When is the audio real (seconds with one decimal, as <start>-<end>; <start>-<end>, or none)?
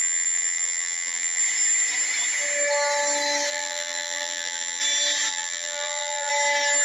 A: 1.4-3.5; 4.8-5.3; 6.3-6.8